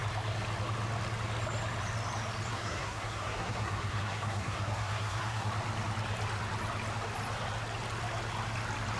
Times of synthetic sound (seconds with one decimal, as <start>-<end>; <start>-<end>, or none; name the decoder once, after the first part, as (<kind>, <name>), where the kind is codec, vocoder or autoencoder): 2.5-5.5 (codec, SNAC)